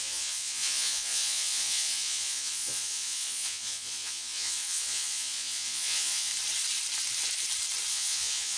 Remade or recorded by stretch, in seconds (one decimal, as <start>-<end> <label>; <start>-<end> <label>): 0.0-6.3 remade; 6.3-7.9 recorded; 7.9-8.6 remade